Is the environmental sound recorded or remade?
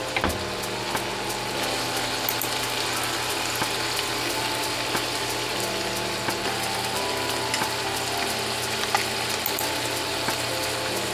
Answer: recorded